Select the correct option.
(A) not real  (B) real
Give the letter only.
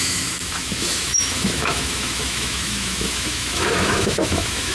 A